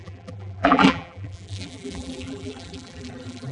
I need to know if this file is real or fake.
fake